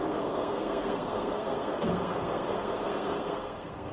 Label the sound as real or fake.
fake